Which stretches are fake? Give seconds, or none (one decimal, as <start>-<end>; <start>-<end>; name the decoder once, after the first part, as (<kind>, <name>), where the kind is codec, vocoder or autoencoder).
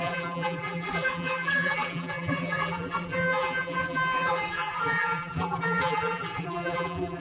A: 0.0-7.2 (vocoder, BigVGAN v2)